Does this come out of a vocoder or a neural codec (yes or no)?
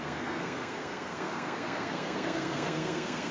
yes